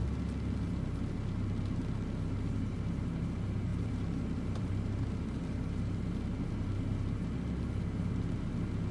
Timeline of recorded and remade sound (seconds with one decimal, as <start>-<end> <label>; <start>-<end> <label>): 0.0-3.7 recorded; 3.7-5.8 remade; 5.8-8.9 recorded